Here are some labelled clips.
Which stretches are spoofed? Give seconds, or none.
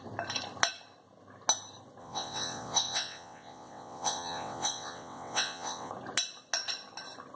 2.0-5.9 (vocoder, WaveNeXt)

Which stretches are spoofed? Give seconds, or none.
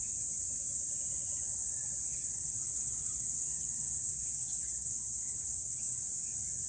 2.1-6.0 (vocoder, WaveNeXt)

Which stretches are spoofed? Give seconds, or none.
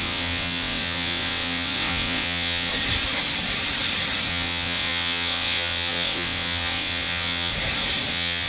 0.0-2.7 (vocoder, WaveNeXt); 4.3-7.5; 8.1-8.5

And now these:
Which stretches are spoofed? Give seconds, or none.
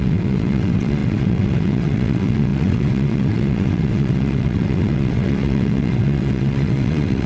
0.0-7.3 (vocoder, WaveNeXt)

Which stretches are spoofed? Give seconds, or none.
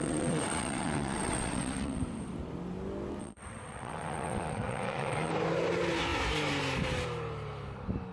0.0-2.0 (vocoder, WaveNeXt); 3.2-5.3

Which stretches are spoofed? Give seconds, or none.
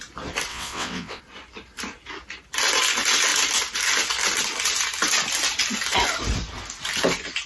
0.5-1.2 (vocoder, WaveNeXt)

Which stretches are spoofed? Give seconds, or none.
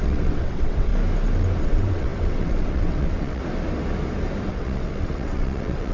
0.0-0.9 (vocoder, WaveNeXt); 1.6-3.4; 4.5-5.9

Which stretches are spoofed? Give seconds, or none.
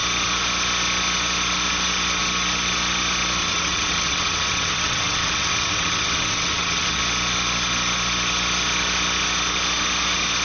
3.4-7.0 (vocoder, WaveNeXt)